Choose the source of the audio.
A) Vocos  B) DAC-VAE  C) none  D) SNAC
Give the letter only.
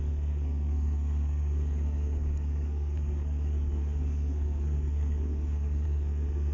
D